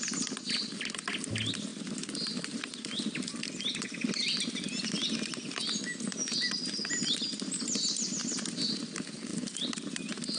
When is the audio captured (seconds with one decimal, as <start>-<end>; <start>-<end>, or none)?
0.0-1.7; 3.6-9.3